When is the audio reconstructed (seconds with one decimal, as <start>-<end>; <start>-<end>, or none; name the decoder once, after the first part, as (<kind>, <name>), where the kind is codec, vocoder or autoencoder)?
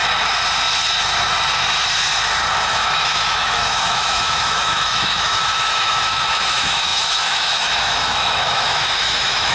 2.7-9.5 (autoencoder, DAC-VAE)